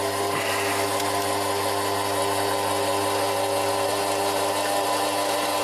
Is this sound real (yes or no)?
yes